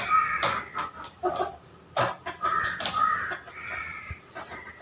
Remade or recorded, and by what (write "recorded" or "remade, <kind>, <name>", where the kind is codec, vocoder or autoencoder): recorded